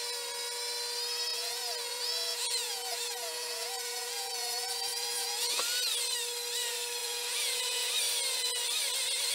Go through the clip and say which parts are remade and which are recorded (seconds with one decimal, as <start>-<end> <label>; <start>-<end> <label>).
0.0-1.3 recorded; 1.3-5.6 remade; 5.6-7.0 recorded; 7.0-7.9 remade; 7.9-9.3 recorded